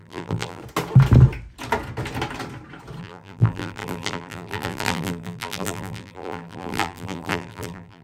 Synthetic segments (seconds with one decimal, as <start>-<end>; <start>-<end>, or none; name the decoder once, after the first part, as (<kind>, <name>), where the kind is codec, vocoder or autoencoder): 0.0-0.6 (vocoder, BigVGAN v2); 3.0-8.0